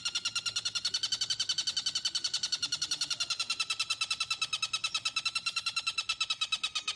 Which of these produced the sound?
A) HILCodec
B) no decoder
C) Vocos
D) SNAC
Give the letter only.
B